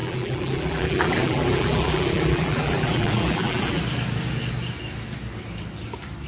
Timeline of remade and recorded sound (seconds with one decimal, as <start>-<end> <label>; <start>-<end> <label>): 0.0-3.8 remade; 3.8-6.3 recorded